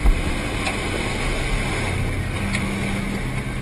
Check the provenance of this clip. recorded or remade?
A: recorded